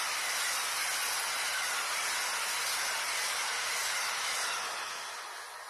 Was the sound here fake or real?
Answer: real